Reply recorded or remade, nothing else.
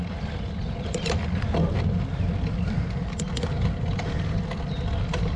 recorded